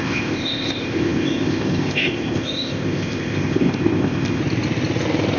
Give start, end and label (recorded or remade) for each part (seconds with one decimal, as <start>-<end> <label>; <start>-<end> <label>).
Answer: 0.0-4.4 remade; 4.4-5.4 recorded